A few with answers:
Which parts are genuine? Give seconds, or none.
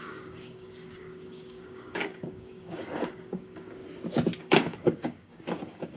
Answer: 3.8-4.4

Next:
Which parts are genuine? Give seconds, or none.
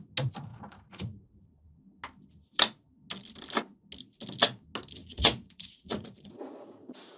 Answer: 0.0-0.5; 1.4-5.0